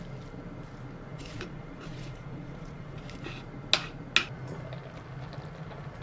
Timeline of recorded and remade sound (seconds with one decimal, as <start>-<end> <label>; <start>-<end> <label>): 0.0-1.1 recorded; 1.1-3.0 remade; 3.0-6.0 recorded